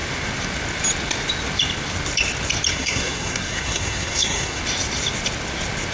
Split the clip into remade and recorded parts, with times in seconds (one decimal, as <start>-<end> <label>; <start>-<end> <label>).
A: 0.0-2.7 recorded; 2.7-4.6 remade; 4.6-5.9 recorded